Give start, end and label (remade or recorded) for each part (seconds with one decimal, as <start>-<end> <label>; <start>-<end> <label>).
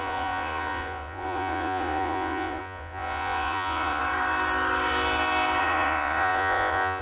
0.0-4.0 remade; 4.0-5.6 recorded; 5.6-7.0 remade